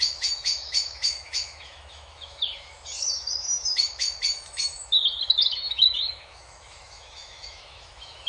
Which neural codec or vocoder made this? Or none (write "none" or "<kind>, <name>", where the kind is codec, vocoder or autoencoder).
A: autoencoder, DAC-VAE